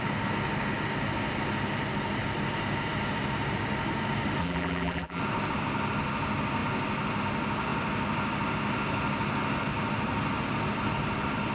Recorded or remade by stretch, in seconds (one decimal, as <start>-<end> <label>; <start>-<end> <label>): 0.0-4.4 recorded; 4.4-5.2 remade; 5.2-11.5 recorded